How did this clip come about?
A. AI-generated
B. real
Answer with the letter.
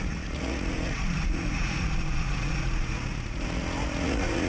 A